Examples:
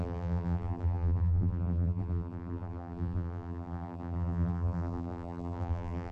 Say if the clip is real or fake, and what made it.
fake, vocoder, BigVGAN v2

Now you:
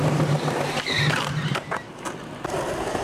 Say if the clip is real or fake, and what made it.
real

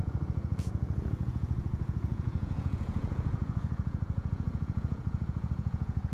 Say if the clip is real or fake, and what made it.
fake, vocoder, Vocos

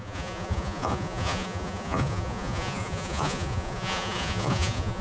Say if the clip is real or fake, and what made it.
fake, vocoder, Vocos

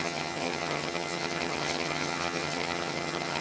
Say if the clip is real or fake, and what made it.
fake, vocoder, HiFi-GAN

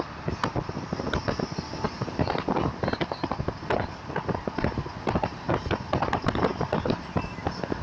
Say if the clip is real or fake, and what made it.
real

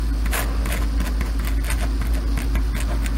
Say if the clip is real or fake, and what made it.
real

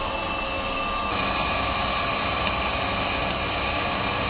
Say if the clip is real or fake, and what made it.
real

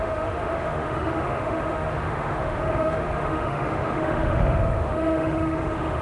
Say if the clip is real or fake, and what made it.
fake, autoencoder, DAC-VAE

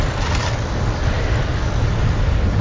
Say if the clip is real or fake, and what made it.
fake, vocoder, BigVGAN v2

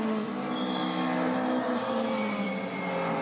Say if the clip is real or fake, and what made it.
real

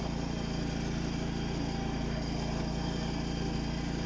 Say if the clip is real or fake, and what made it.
real